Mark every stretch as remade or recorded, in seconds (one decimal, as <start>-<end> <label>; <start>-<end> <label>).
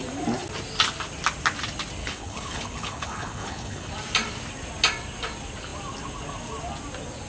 0.0-2.0 recorded; 2.0-3.9 remade; 3.9-7.3 recorded